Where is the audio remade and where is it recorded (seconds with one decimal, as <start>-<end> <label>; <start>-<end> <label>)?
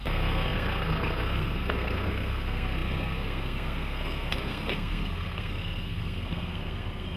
0.0-7.2 remade